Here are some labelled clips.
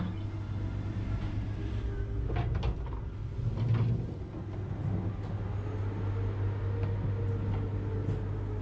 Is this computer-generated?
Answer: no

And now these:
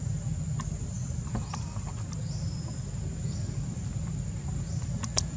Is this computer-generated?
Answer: no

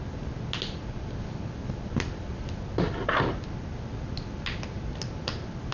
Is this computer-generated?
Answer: no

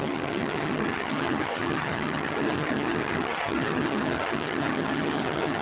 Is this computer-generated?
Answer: yes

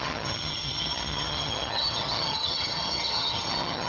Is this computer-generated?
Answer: yes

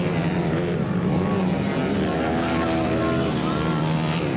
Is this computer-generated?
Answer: no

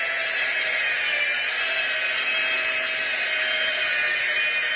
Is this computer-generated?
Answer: no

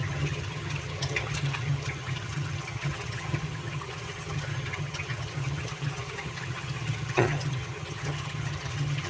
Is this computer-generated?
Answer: yes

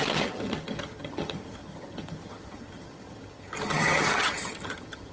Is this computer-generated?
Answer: yes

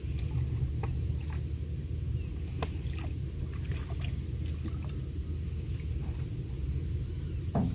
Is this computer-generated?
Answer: no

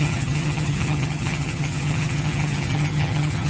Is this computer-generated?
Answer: yes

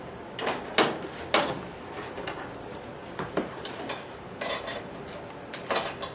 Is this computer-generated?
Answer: no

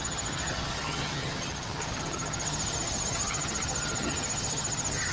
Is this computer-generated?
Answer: yes